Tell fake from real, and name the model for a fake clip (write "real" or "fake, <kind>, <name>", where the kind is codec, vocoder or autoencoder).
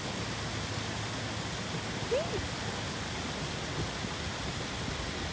real